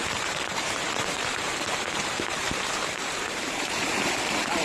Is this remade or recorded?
remade